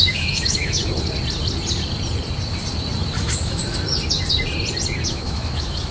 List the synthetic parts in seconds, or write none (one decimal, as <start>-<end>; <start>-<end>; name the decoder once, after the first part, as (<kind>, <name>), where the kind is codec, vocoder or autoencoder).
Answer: 0.0-0.8 (autoencoder, DAC-VAE); 3.2-3.6; 5.1-5.9